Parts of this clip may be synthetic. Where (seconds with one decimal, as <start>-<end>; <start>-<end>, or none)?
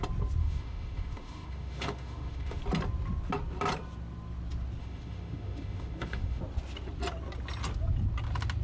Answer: 0.4-2.6; 4.8-6.4